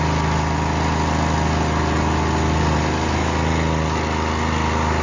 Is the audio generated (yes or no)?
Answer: no